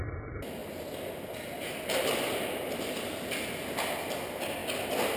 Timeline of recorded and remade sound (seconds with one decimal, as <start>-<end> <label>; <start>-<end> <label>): 0.0-5.2 recorded